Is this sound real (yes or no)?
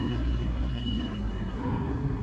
no